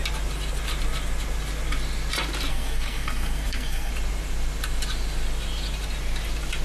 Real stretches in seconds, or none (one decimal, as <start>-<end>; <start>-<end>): 0.0-2.5; 3.9-6.6